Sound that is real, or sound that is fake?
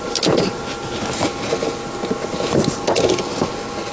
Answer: real